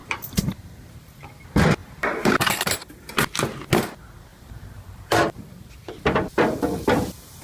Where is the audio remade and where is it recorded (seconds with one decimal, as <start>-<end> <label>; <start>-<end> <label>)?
0.0-1.4 remade; 1.4-1.8 recorded; 1.8-2.9 remade; 2.9-4.3 recorded; 4.3-5.8 remade; 5.8-7.4 recorded